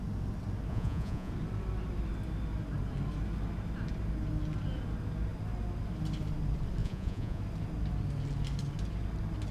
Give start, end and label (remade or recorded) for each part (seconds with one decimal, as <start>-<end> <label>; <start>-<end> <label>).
0.0-0.7 recorded; 0.7-1.3 remade; 1.3-6.8 recorded; 6.8-7.4 remade; 7.4-9.5 recorded